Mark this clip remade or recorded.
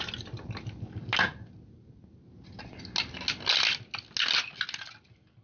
recorded